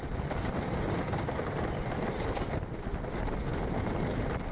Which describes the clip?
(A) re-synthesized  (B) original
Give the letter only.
B